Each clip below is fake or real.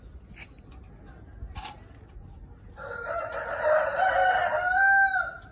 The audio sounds real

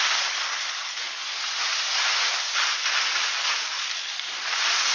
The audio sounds real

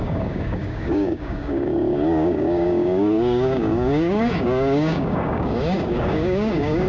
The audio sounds fake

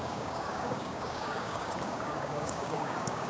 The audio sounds fake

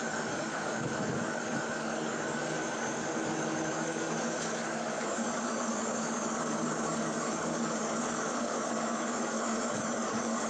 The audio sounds fake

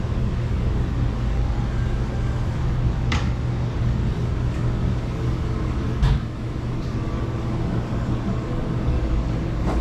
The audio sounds fake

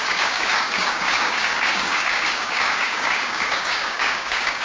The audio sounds fake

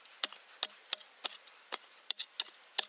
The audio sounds real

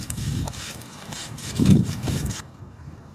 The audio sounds fake